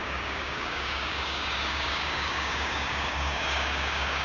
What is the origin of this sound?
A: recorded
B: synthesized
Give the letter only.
B